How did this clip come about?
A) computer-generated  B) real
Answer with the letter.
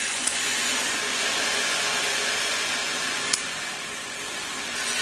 A